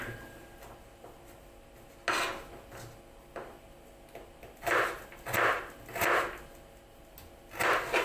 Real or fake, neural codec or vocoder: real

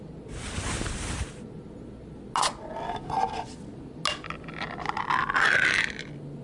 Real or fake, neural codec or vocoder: real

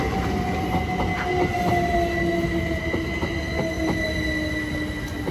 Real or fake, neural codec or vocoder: real